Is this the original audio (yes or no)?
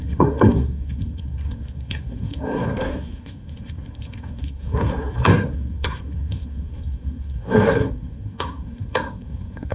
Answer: no